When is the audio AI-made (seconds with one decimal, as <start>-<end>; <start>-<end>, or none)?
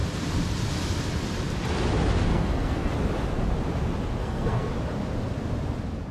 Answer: 2.3-2.9; 4.2-4.7